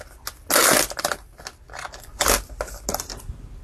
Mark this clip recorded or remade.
recorded